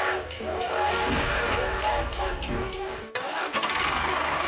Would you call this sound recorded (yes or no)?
no